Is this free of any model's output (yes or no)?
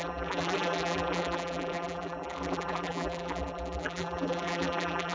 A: no